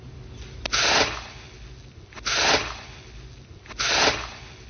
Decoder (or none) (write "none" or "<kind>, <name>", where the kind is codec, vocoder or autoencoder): none